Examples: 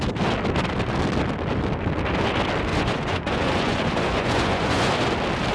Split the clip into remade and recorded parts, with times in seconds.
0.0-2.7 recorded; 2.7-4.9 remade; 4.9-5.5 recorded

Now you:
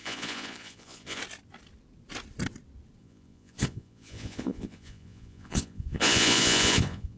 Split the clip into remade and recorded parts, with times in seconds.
0.0-1.2 remade; 1.2-3.0 recorded; 3.0-7.2 remade

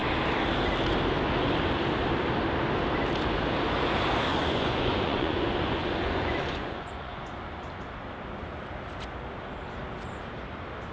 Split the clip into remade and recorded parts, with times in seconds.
0.0-4.3 recorded; 4.3-7.3 remade; 7.3-10.9 recorded

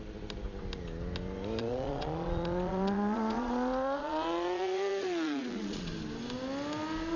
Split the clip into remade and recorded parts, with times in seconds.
0.0-1.6 recorded; 1.6-5.9 remade; 5.9-7.2 recorded

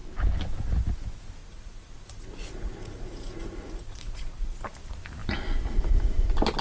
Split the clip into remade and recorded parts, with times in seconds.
0.0-1.4 recorded; 1.4-4.6 remade; 4.6-6.6 recorded